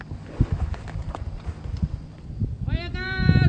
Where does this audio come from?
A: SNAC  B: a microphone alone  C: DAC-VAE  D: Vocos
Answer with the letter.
B